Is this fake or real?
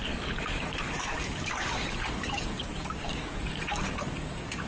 fake